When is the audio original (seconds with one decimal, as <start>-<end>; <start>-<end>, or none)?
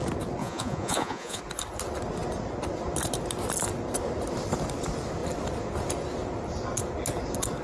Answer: 0.0-0.4; 1.4-7.6